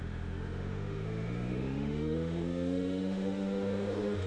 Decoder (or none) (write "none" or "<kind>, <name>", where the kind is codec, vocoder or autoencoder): autoencoder, DAC-VAE